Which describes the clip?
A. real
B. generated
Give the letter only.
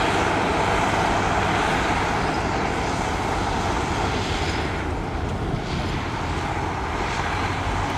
A